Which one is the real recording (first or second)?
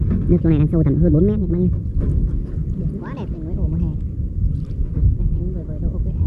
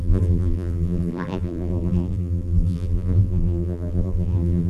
first